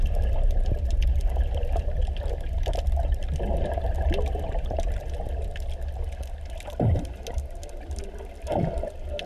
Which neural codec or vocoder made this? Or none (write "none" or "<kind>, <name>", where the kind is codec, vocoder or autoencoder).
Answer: none